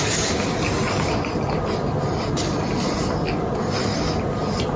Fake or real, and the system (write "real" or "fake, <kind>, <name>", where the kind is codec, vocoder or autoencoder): real